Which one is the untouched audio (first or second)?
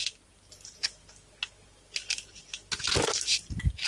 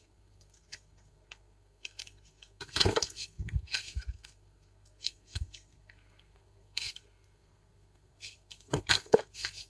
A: first